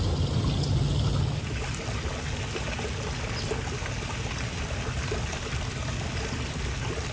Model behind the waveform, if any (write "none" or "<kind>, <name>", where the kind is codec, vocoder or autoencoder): none